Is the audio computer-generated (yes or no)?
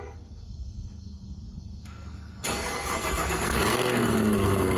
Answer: yes